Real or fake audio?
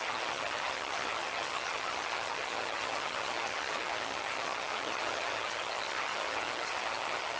fake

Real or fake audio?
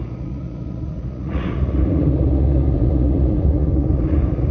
fake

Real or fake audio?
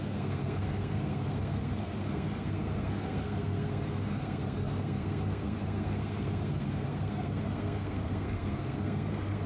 fake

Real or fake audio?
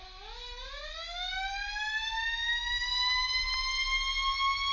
real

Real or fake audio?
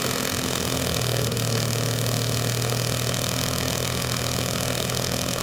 fake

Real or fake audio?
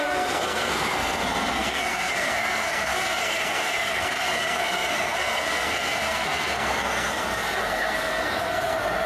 fake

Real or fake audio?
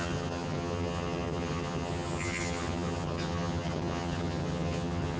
fake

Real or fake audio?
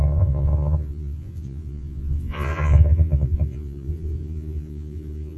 fake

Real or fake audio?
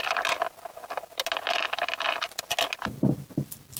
real